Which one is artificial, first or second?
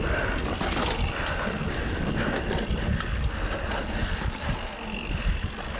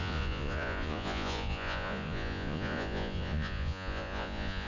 second